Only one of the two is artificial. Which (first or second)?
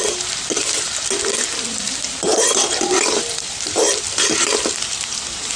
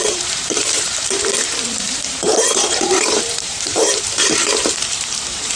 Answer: second